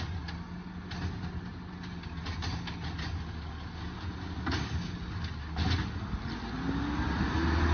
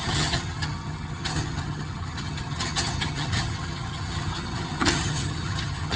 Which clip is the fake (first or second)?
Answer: second